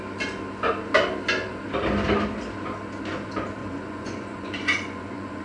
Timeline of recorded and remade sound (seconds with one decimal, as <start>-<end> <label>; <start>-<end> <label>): 0.0-3.6 recorded; 3.6-5.4 remade